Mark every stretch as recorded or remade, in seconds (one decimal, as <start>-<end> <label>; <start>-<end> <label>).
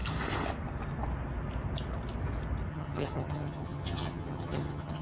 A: 0.0-2.7 recorded; 2.7-5.0 remade